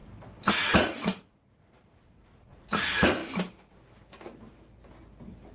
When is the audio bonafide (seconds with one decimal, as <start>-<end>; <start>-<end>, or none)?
0.0-0.5; 3.2-5.5